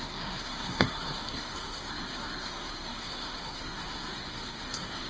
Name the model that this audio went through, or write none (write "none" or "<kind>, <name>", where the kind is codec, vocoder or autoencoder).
codec, SNAC